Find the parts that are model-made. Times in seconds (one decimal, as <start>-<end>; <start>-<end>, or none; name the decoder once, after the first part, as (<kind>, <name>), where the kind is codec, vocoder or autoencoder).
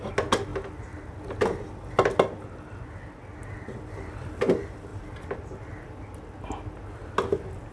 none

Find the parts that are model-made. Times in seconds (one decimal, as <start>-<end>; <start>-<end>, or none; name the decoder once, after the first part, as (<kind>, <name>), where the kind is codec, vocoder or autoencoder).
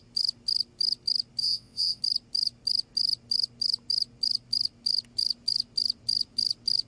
1.4-2.0 (vocoder, WaveNeXt)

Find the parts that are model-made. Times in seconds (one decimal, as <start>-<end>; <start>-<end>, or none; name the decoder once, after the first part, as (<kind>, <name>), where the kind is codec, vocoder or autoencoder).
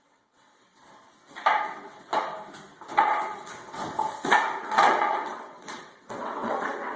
0.0-0.8 (vocoder, WaveNeXt); 1.6-2.1; 2.9-3.8; 4.6-7.0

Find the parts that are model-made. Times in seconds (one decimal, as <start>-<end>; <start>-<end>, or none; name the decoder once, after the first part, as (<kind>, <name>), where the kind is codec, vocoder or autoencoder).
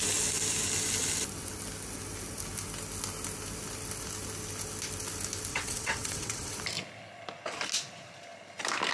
5.5-6.5 (vocoder, WaveNeXt)